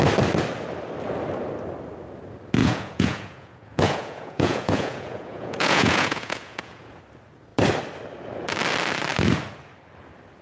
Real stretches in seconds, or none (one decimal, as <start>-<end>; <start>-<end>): 0.0-2.6; 7.0-10.4